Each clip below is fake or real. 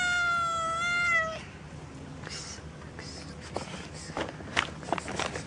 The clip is real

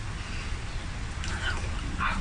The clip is real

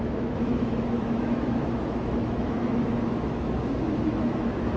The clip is fake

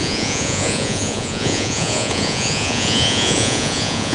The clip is fake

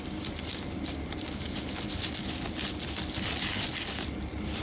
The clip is real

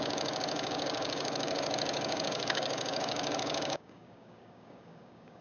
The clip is fake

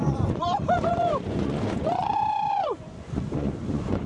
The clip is fake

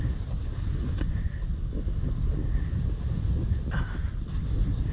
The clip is real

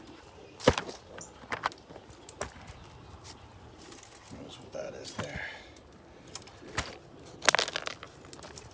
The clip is real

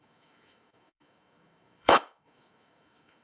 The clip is fake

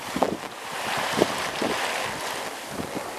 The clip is real